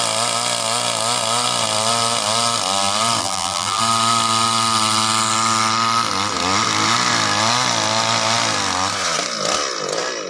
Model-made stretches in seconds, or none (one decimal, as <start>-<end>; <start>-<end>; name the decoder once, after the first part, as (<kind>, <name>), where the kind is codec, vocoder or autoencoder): 3.2-3.8 (vocoder, BigVGAN v2)